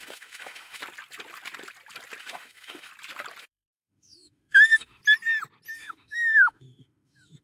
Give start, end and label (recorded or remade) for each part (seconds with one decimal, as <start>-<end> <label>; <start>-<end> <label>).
0.0-0.8 remade; 0.8-2.2 recorded; 2.2-2.9 remade; 2.9-3.4 recorded; 3.4-5.0 remade; 5.0-5.7 recorded; 5.7-7.4 remade